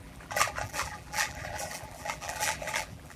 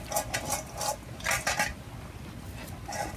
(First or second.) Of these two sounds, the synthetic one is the first